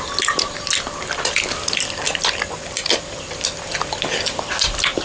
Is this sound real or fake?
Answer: real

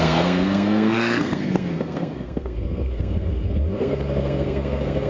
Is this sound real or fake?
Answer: fake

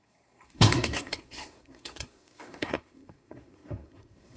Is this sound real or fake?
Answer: fake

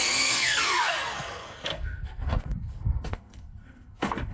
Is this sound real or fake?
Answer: fake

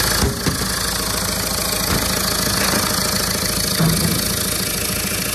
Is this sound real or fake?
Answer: real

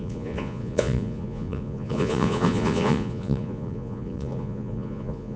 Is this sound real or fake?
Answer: fake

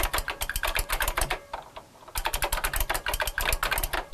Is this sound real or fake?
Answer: real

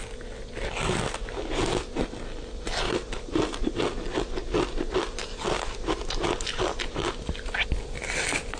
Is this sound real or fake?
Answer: real